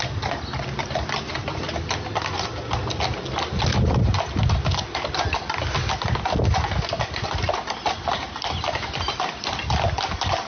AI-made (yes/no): no